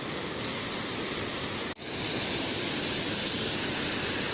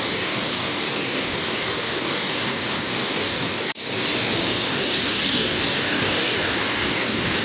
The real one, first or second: first